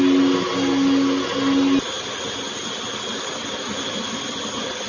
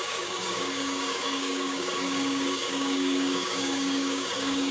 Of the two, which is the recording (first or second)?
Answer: first